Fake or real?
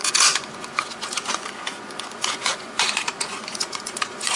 fake